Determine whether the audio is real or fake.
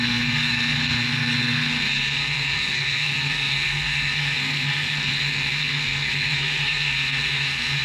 fake